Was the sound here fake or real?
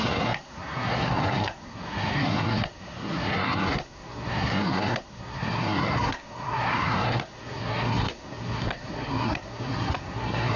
fake